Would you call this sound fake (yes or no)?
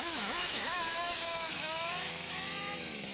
yes